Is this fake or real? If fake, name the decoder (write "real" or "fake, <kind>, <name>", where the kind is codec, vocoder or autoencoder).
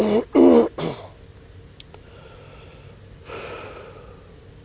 real